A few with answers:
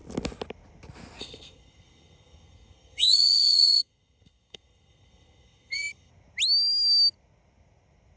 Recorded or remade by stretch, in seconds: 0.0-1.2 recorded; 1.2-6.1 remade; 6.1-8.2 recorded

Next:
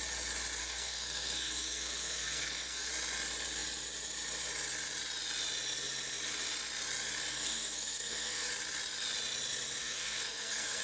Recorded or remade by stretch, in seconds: 0.0-0.6 recorded; 0.6-2.9 remade; 2.9-7.3 recorded; 7.3-8.5 remade; 8.5-9.8 recorded; 9.8-10.8 remade